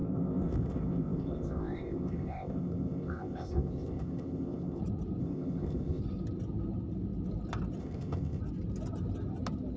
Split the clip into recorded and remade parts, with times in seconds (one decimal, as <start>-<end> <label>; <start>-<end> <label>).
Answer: 0.0-4.8 remade; 4.8-5.2 recorded; 5.2-6.0 remade; 6.0-7.8 recorded; 7.8-8.4 remade; 8.4-9.8 recorded